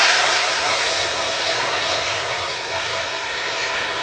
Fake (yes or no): yes